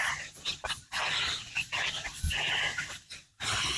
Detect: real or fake real